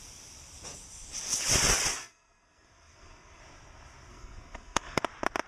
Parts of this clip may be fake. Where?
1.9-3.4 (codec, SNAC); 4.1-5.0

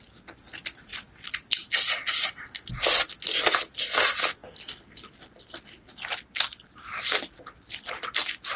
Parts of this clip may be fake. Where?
none

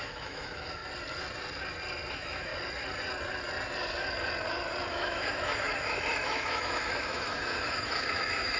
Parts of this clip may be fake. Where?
0.0-0.8 (autoencoder, DAC-VAE); 2.1-2.5; 4.9-8.6

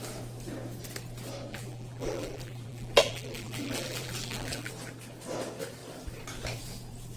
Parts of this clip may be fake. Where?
1.5-4.7 (vocoder, BigVGAN v2)

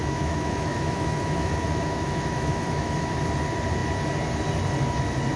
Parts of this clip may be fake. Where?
0.0-3.2 (autoencoder, DAC-VAE)

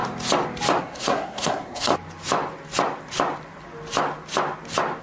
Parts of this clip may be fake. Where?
0.8-1.9 (codec, SNAC)

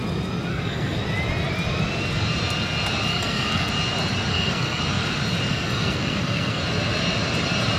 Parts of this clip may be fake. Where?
0.5-1.0 (codec, SNAC); 3.1-3.7; 4.3-4.8; 5.5-6.6